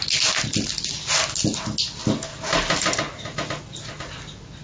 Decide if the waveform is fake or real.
real